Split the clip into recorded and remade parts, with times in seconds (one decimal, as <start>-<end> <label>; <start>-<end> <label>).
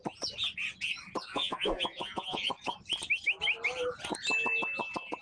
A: 0.0-1.3 recorded; 1.3-2.5 remade; 2.5-5.2 recorded